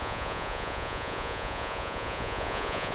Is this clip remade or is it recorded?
remade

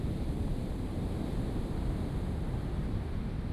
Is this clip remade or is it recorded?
recorded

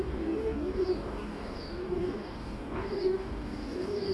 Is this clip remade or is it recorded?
remade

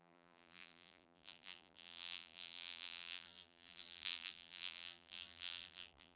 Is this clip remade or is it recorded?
remade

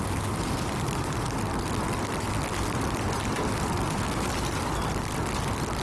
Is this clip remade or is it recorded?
recorded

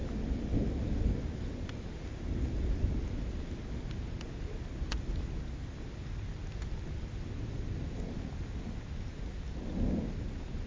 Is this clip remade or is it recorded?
recorded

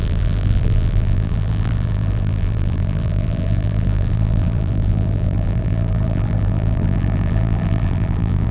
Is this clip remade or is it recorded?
remade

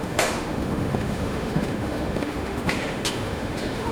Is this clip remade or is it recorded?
remade